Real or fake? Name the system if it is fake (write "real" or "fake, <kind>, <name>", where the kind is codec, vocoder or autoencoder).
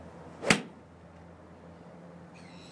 real